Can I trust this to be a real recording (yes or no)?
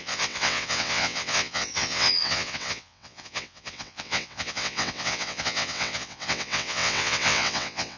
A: no